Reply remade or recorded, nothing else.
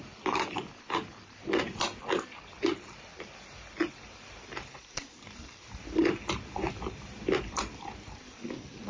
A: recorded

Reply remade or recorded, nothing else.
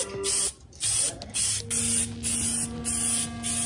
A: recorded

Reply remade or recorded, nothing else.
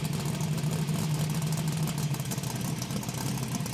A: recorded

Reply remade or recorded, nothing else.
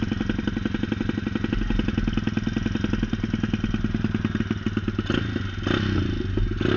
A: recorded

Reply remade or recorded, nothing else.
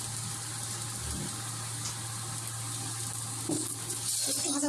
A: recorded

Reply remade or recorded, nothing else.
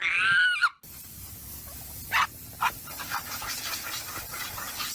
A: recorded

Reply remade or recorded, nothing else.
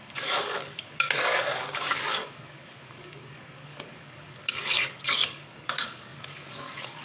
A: remade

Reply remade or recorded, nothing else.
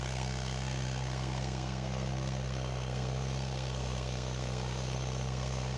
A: remade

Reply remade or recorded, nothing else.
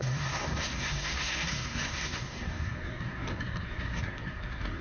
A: remade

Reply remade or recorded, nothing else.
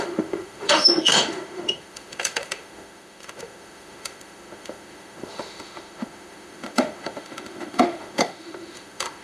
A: remade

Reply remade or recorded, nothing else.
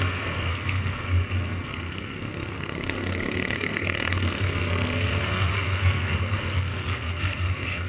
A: remade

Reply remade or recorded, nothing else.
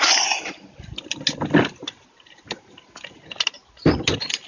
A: recorded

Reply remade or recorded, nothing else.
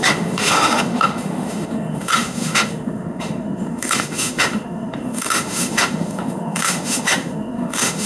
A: remade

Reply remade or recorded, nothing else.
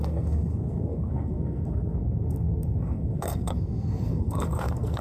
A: remade